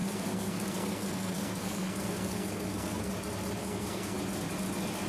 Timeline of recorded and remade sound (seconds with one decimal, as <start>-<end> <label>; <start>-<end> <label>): 0.0-3.1 remade; 3.1-3.6 recorded; 3.6-4.2 remade; 4.2-5.1 recorded